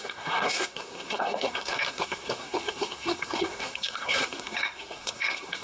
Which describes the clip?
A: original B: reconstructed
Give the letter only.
B